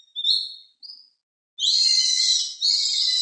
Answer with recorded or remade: recorded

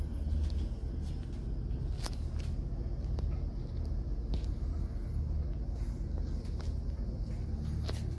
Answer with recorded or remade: recorded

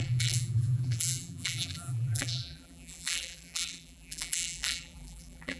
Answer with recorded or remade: remade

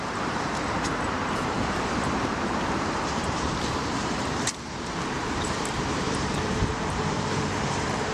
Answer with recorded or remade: remade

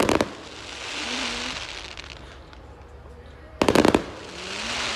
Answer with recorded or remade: recorded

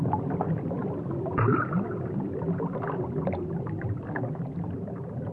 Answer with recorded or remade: recorded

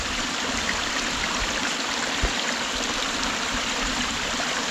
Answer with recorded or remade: remade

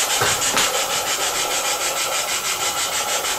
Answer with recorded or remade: recorded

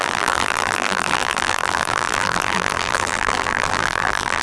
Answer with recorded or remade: remade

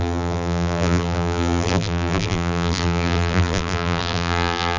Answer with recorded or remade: remade